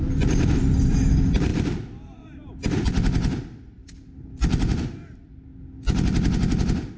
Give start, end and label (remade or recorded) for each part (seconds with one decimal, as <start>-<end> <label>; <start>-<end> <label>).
0.0-1.5 recorded; 1.5-2.8 remade; 2.8-3.8 recorded; 3.8-5.2 remade; 5.2-7.0 recorded